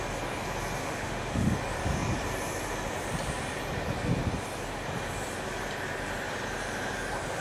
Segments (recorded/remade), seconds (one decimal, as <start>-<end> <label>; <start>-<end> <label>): 0.0-0.8 recorded; 0.8-1.6 remade; 1.6-7.4 recorded